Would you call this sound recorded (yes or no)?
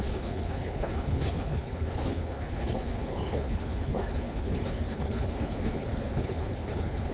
no